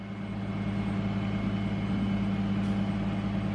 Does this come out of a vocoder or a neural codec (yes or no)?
no